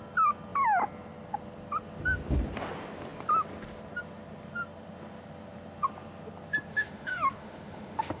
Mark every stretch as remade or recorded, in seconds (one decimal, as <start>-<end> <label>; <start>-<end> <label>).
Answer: 0.0-6.7 recorded; 6.7-8.2 remade